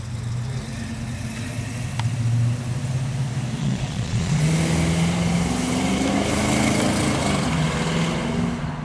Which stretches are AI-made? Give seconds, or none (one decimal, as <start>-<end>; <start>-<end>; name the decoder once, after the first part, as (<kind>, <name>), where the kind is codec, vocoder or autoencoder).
3.6-4.4 (vocoder, Vocos)